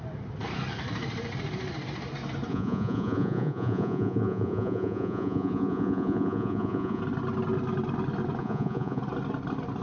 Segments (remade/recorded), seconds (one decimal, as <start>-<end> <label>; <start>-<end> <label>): 0.0-2.5 recorded; 2.5-7.0 remade; 7.0-8.4 recorded; 8.4-9.0 remade; 9.0-9.8 recorded